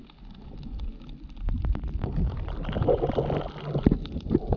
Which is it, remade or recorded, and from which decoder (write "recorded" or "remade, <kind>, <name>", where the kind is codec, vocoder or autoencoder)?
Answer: recorded